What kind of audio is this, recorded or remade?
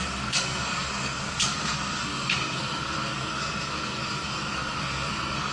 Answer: remade